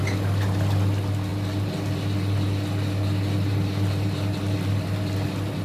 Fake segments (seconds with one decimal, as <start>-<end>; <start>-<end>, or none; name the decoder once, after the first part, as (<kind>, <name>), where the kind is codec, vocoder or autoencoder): none